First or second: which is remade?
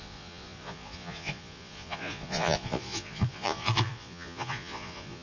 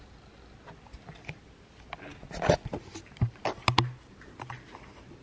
first